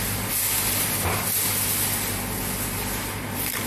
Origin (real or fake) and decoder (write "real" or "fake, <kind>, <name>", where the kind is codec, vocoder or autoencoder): real